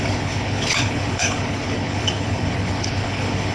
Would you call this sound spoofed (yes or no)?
yes